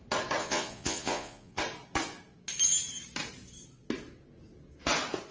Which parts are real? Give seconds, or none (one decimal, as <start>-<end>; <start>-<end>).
0.0-0.4; 1.6-5.3